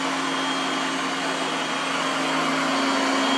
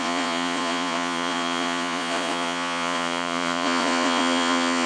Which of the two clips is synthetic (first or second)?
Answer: second